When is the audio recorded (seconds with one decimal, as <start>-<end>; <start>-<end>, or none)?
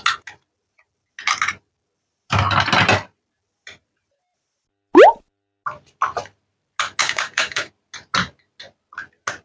0.0-7.0; 7.7-9.4